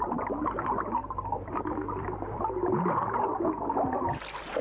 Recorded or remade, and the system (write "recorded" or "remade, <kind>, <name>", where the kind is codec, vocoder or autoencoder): recorded